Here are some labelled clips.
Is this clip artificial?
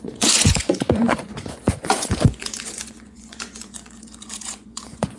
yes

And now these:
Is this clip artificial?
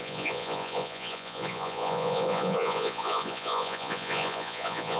yes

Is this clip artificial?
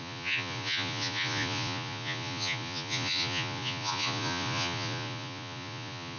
yes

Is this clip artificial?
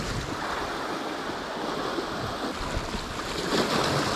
no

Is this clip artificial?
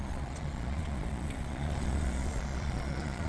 yes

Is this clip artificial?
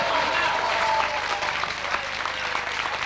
no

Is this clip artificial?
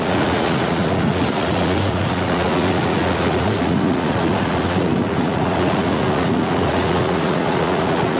yes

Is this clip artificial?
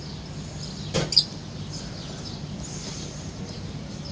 no